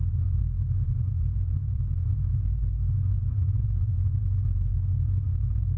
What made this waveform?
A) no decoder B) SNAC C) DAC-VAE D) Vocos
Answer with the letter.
D